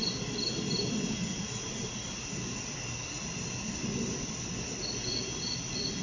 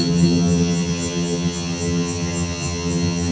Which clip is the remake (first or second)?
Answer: second